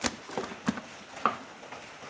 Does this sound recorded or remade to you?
recorded